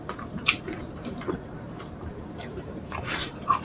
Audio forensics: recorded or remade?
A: remade